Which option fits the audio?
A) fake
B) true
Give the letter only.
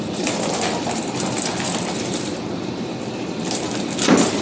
A